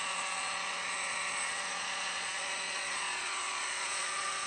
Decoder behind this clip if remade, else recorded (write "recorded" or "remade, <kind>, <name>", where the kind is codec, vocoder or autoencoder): remade, vocoder, Vocos